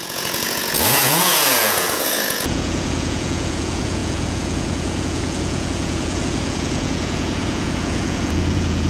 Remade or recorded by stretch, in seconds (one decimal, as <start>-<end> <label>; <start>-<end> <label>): 0.0-8.9 remade